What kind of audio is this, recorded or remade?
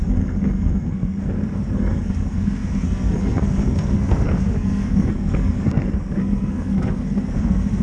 remade